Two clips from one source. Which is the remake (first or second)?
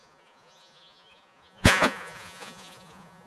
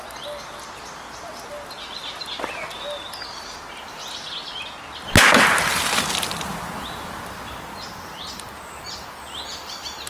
first